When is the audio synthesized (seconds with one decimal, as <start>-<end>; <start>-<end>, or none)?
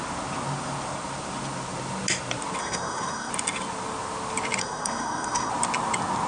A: 2.6-3.3; 4.6-5.5